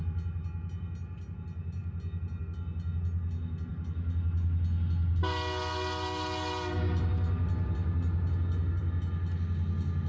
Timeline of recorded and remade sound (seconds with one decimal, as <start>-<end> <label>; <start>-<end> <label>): 0.0-10.1 recorded